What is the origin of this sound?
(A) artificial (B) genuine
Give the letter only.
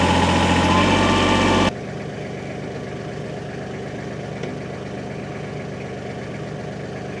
B